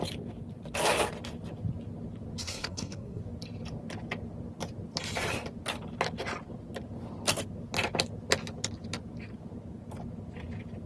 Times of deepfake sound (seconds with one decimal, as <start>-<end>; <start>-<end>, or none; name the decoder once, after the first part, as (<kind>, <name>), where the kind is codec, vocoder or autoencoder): 2.4-3.2 (codec, SNAC)